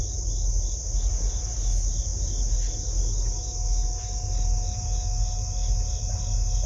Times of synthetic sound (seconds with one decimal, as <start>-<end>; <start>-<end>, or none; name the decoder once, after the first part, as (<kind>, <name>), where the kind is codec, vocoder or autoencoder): none